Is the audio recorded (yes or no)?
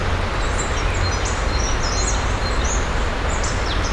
yes